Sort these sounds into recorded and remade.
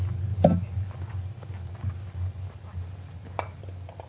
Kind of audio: recorded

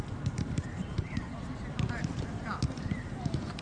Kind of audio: remade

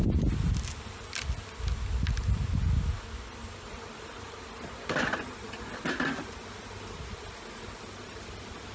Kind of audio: recorded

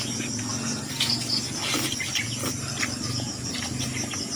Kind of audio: recorded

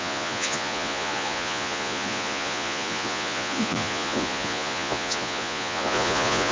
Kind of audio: remade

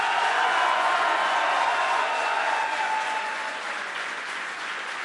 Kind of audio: remade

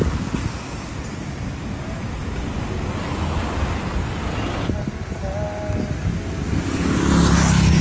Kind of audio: recorded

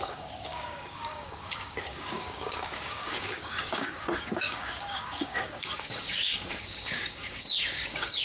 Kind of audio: remade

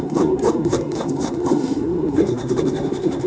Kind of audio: remade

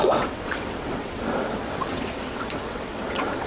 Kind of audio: remade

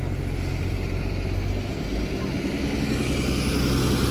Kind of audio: recorded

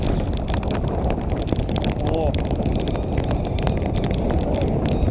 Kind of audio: recorded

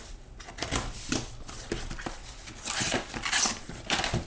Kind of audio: remade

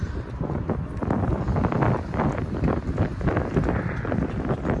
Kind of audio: recorded